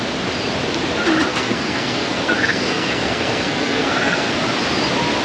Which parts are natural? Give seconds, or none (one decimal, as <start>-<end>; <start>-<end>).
0.0-1.3; 4.4-5.2